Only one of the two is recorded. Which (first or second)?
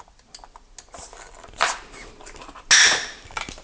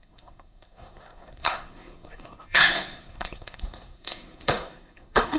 first